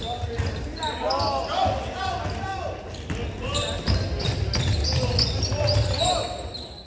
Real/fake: real